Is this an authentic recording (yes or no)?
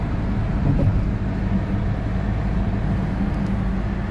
yes